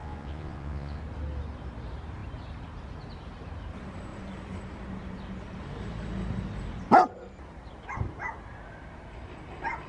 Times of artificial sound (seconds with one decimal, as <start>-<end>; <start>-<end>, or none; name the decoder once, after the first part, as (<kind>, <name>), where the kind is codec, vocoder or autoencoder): 0.0-1.0 (vocoder, Vocos)